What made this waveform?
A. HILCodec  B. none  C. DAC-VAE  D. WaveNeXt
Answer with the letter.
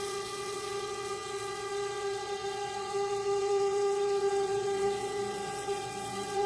D